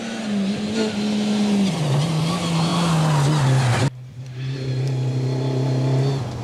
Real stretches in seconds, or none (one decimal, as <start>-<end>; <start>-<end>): 0.0-6.4